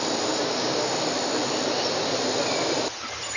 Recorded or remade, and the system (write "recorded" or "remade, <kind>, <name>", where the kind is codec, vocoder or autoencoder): recorded